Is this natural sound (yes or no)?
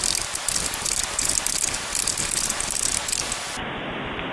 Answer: yes